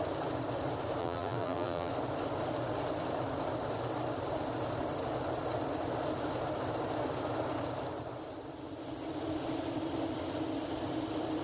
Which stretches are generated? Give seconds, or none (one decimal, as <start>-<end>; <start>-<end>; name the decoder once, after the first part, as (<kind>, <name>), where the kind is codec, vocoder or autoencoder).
1.0-1.9 (vocoder, BigVGAN v2)